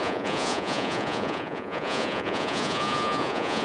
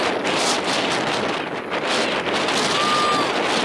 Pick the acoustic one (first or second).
second